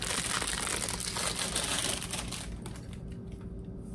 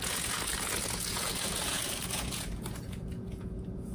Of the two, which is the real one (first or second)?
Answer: first